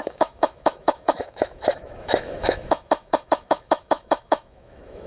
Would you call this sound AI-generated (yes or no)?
yes